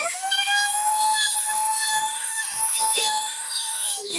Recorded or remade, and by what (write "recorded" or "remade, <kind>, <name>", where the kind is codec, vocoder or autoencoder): remade, autoencoder, DAC-VAE